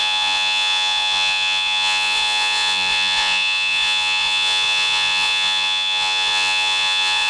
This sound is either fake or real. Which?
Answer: fake